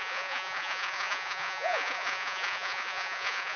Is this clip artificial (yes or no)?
yes